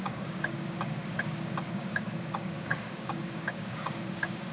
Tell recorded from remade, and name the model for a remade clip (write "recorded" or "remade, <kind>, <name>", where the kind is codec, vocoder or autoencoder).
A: remade, codec, DAC